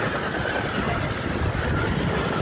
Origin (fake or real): real